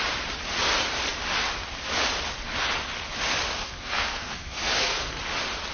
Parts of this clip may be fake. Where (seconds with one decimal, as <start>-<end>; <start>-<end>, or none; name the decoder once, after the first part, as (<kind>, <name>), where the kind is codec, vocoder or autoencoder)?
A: 3.6-5.2 (codec, SNAC)